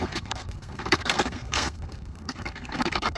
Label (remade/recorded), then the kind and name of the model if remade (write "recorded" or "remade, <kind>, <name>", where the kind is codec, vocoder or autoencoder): remade, codec, SNAC